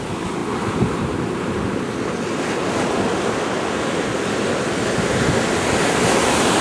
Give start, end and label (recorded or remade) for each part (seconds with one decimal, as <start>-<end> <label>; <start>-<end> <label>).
0.0-6.6 recorded